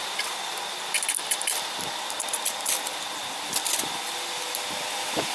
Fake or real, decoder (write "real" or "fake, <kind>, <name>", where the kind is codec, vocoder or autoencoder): fake, vocoder, BigVGAN v2